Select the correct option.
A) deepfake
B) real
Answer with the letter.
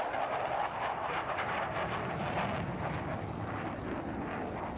A